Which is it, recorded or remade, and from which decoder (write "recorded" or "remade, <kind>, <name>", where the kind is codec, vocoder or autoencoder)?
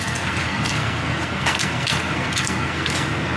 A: remade, codec, SNAC